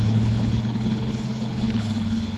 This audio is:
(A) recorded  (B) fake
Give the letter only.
B